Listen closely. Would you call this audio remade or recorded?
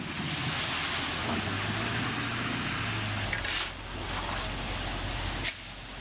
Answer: recorded